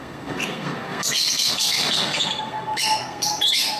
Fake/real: fake